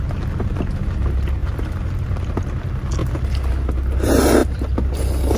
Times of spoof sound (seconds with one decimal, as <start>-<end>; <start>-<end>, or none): 1.4-1.9; 3.0-3.5; 4.4-5.0